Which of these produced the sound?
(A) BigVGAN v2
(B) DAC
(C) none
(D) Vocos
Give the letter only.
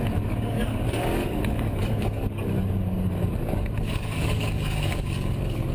B